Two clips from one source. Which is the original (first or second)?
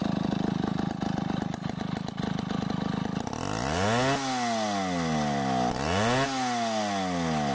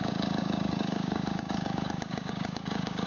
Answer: first